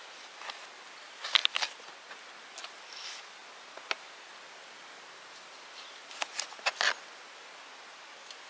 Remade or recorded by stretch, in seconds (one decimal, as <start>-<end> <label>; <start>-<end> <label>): 0.0-8.5 recorded